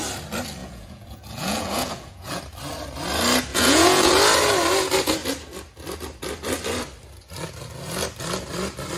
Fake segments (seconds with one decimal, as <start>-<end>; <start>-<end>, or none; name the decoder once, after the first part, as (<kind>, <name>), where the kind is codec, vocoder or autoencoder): 0.6-2.4 (vocoder, Vocos); 3.5-4.1